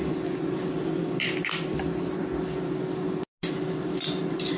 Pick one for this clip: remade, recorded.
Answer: recorded